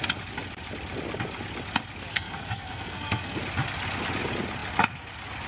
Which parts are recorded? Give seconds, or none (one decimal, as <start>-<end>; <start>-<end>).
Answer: 0.0-2.1; 3.4-5.5